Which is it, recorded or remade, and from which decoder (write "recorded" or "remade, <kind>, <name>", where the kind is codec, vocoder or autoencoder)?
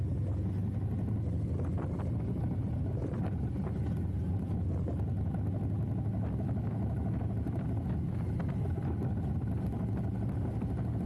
recorded